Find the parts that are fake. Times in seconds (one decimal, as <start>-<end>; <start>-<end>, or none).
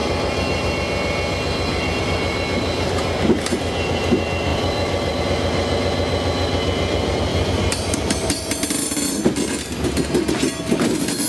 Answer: 4.5-5.2; 7.3-9.3